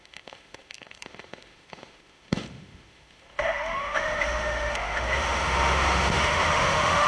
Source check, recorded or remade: remade